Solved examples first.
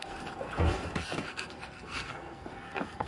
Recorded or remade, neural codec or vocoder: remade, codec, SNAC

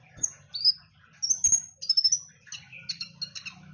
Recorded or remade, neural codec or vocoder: recorded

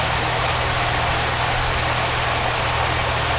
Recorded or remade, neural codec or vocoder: recorded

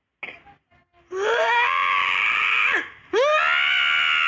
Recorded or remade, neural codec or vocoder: recorded